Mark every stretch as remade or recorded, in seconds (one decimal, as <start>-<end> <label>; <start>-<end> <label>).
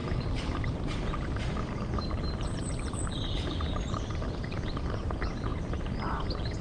0.0-6.6 recorded